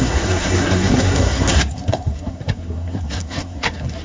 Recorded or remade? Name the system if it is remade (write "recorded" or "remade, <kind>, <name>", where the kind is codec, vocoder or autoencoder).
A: remade, codec, SNAC